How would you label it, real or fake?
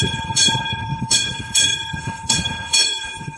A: fake